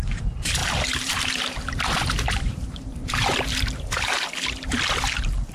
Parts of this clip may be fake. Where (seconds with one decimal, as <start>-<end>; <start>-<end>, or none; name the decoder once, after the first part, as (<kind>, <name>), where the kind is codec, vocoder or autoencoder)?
0.6-3.9 (vocoder, BigVGAN v2)